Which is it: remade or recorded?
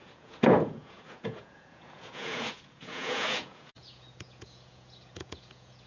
remade